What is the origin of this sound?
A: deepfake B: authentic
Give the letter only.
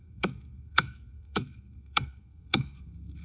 A